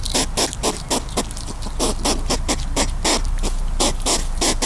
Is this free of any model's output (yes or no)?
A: yes